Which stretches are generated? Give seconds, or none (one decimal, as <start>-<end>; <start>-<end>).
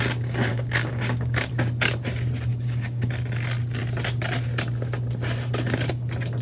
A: 0.5-1.5; 2.5-3.1